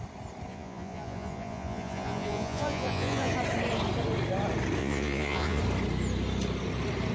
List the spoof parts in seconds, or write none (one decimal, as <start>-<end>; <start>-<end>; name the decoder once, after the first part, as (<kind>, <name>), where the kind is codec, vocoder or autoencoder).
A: 0.5-3.3 (vocoder, Vocos); 4.8-5.6